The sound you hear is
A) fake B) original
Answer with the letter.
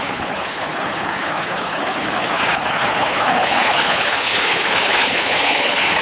A